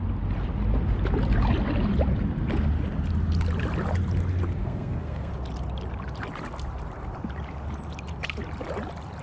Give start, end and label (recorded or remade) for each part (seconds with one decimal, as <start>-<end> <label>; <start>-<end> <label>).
0.0-4.6 recorded; 4.6-5.3 remade; 5.3-9.2 recorded